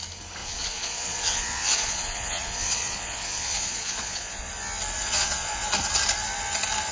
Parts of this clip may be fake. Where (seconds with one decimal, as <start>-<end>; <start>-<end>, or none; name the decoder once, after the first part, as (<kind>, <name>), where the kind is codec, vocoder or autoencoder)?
0.4-4.5 (vocoder, Vocos); 5.0-5.7